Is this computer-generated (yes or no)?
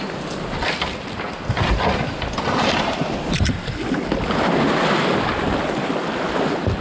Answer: no